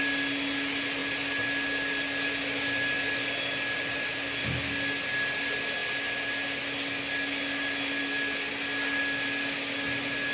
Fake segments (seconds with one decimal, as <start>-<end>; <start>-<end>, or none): none